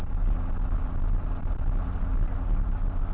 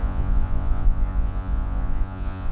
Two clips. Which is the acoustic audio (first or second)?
first